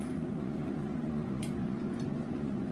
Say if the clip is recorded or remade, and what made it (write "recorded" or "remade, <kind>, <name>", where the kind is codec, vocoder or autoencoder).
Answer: remade, vocoder, Vocos